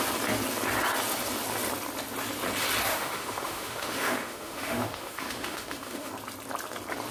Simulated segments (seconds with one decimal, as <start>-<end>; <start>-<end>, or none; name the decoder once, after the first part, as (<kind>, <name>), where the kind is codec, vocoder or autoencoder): 2.9-6.1 (autoencoder, DAC-VAE)